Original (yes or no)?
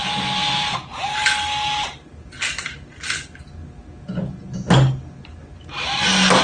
yes